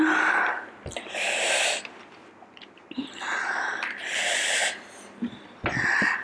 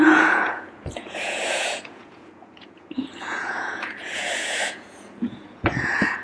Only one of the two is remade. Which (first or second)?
second